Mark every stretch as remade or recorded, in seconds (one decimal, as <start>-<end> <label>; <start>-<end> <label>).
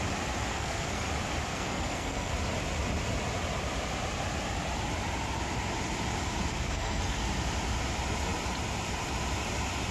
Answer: 0.0-0.5 recorded; 0.5-1.1 remade; 1.1-1.5 recorded; 1.5-2.3 remade; 2.3-6.5 recorded; 6.5-7.2 remade; 7.2-9.9 recorded